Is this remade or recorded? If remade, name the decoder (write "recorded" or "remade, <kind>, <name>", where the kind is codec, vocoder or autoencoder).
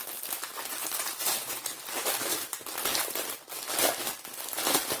recorded